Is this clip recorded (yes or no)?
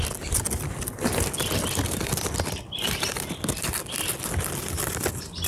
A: yes